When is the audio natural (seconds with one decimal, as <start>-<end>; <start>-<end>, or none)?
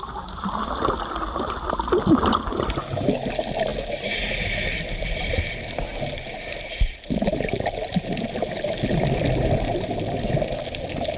0.0-2.8; 3.3-11.2